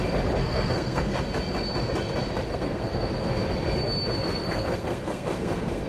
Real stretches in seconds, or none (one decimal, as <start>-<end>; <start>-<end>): 0.0-0.4; 1.2-2.5; 3.1-4.4